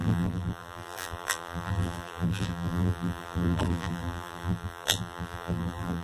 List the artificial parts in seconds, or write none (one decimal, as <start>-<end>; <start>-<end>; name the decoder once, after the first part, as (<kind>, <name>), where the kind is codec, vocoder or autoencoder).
0.0-6.0 (vocoder, BigVGAN v2)